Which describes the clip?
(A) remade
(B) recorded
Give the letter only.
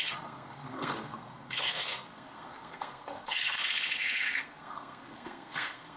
A